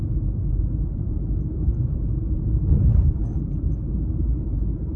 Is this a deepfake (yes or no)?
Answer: yes